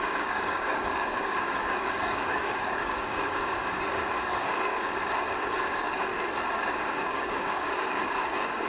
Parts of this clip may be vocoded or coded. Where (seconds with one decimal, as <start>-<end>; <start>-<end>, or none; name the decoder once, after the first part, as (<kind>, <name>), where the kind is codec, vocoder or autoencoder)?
0.0-4.7 (codec, DAC); 5.5-6.1; 6.7-8.7